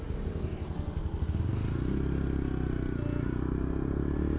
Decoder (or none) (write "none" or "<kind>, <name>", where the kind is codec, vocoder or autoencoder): none